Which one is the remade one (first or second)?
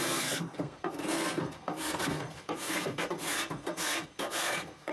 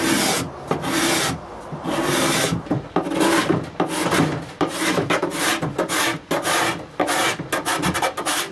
first